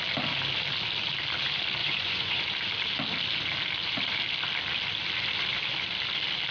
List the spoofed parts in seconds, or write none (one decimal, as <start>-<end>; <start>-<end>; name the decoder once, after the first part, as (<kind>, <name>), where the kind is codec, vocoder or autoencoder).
1.8-2.4 (vocoder, Vocos)